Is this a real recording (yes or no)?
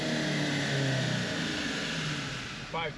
yes